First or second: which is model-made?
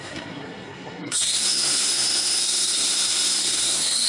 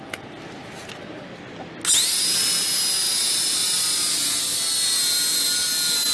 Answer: first